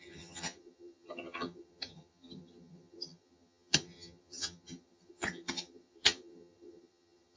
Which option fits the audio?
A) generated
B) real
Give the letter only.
A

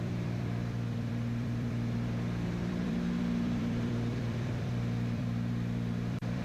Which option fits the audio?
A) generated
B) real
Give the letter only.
A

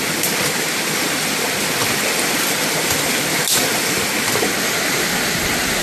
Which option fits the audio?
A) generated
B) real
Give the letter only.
B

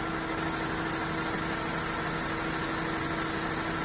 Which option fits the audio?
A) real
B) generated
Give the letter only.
A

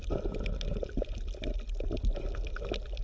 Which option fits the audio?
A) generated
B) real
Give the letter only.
B